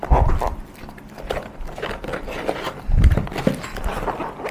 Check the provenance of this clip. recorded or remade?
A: recorded